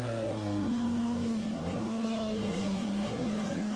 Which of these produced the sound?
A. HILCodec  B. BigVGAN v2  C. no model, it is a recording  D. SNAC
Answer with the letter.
D